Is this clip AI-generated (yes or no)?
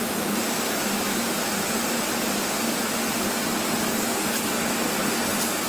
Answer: no